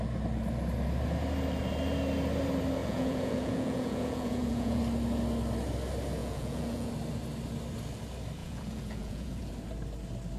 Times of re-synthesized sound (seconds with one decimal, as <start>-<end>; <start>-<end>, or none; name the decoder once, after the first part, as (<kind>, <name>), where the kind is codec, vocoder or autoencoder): 2.8-4.8 (vocoder, Vocos); 6.2-6.9; 8.4-9.5